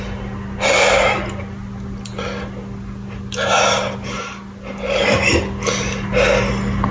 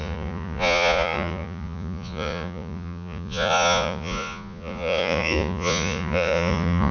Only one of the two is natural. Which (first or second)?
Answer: first